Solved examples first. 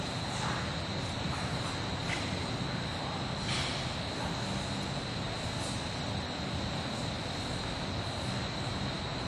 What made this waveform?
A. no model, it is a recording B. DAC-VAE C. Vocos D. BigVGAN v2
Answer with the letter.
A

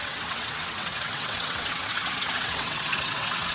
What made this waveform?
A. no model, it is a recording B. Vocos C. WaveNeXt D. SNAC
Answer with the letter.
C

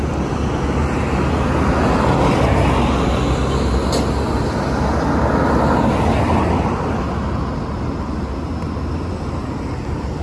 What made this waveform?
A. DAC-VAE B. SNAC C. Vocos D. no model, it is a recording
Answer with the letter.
D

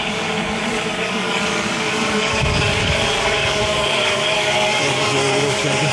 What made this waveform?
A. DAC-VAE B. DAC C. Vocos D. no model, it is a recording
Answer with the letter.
B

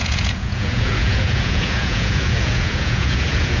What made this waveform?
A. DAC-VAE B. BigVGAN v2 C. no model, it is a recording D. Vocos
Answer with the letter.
D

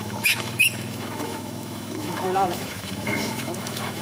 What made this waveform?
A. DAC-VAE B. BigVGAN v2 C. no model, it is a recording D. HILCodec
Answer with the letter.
A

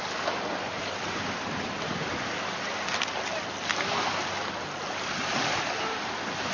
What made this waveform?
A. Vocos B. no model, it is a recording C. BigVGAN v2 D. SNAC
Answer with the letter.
B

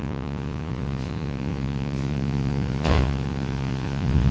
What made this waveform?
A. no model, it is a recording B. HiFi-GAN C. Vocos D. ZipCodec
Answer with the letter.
C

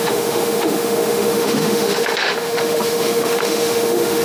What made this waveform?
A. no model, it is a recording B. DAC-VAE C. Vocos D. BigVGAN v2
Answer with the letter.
B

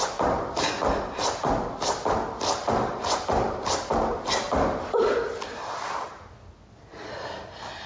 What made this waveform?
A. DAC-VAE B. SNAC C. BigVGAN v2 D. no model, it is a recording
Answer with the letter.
D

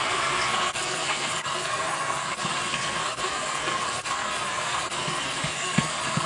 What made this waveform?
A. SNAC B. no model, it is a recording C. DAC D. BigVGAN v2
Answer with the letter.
A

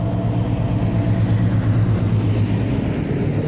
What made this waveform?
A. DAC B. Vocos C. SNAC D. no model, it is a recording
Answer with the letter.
D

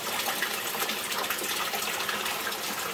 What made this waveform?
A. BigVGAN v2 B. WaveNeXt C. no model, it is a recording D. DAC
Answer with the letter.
A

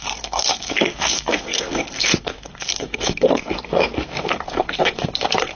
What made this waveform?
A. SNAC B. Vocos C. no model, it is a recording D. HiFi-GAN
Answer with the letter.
A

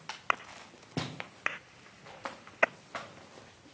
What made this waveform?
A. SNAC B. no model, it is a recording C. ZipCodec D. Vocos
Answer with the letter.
B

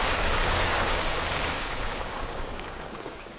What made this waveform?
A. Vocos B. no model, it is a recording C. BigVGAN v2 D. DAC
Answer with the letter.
D